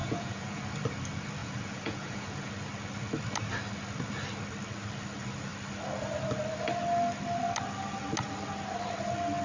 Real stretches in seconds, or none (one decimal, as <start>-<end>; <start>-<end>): 0.6-1.4; 2.5-9.4